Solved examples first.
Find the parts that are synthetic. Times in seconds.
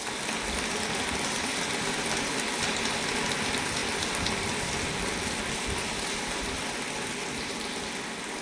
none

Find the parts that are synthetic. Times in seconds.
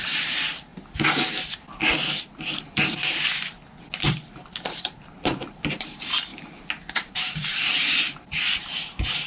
0.0-0.7 (vocoder, BigVGAN v2); 2.2-3.3; 4.7-6.3; 6.9-9.3